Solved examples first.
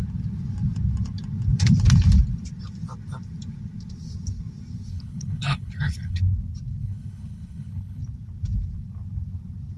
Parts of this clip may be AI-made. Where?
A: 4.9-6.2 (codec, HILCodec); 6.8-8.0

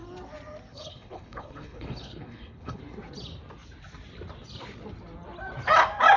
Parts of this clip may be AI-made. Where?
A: 0.7-2.8 (codec, HILCodec)